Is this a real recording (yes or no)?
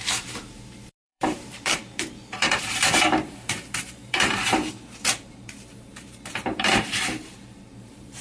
no